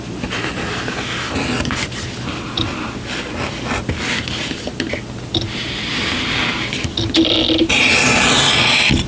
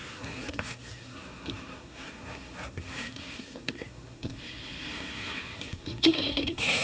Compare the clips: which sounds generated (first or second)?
second